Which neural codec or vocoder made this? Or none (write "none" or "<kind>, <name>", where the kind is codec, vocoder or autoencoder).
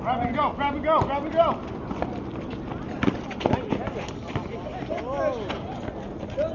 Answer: none